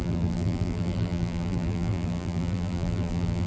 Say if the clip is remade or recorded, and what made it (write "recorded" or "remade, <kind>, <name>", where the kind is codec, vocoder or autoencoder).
remade, vocoder, BigVGAN v2